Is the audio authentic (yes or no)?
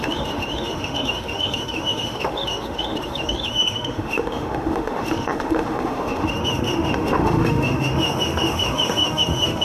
no